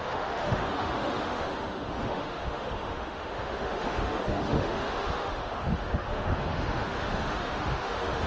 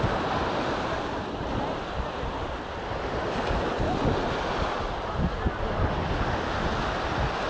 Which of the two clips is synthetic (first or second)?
first